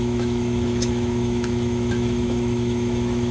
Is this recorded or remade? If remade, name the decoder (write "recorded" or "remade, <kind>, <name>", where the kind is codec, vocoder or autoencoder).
remade, autoencoder, DAC-VAE